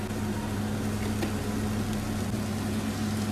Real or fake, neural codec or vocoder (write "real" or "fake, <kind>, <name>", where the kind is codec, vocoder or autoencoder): real